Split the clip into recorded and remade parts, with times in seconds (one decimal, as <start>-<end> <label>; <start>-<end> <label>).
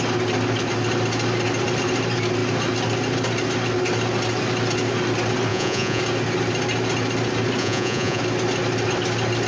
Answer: 0.0-5.5 recorded; 5.5-6.0 remade; 6.0-7.6 recorded; 7.6-8.2 remade; 8.2-9.5 recorded